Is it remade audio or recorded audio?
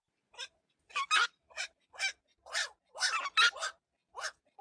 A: recorded